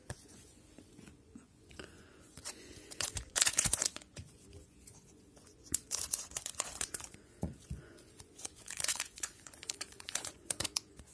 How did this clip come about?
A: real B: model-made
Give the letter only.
B